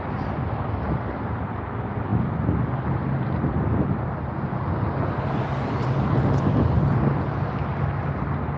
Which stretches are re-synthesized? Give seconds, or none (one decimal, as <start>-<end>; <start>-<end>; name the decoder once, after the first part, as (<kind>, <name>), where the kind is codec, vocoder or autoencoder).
none